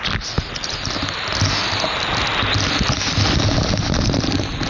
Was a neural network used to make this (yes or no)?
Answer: no